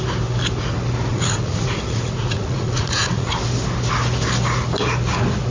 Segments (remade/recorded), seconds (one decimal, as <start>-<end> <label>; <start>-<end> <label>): 0.0-1.1 recorded; 1.1-3.3 remade; 3.3-5.5 recorded